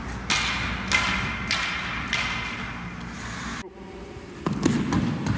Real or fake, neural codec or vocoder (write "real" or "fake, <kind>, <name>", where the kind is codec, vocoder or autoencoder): real